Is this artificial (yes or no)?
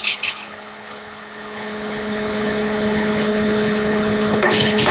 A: yes